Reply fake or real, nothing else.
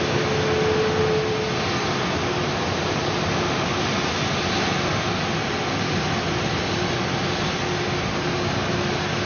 real